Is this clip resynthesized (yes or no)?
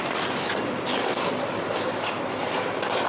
no